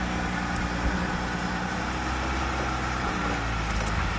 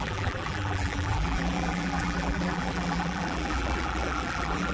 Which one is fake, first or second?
second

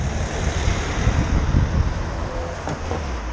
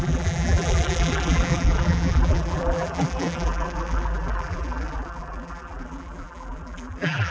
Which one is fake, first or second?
second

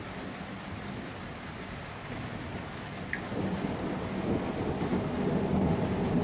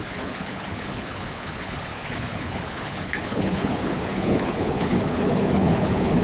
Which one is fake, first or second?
second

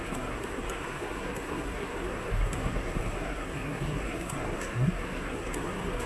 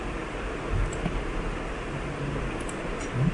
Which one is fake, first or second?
first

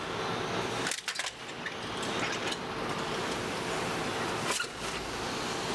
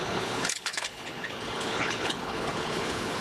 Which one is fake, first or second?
second